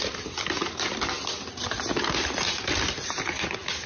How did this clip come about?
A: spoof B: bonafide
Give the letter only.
B